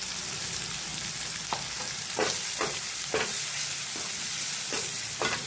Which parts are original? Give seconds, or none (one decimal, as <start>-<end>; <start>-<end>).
0.0-5.5